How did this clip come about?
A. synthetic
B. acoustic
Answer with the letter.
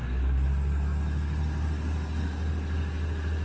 B